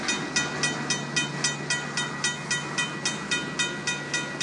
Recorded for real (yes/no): yes